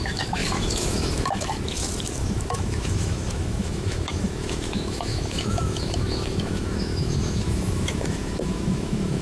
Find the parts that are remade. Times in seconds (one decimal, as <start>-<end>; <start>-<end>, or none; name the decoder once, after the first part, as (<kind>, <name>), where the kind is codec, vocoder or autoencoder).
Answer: 0.0-9.2 (autoencoder, DAC-VAE)